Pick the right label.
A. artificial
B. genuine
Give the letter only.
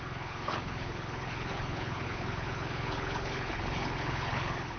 A